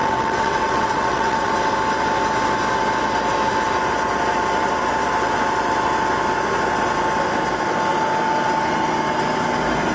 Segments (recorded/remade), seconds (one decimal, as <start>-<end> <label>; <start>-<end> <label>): 0.0-1.5 remade; 1.5-9.9 recorded